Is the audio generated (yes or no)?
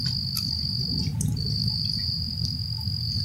no